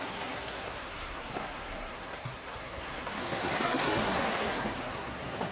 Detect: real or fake fake